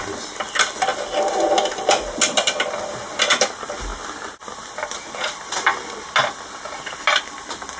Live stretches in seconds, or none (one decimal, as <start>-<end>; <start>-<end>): 0.0-7.8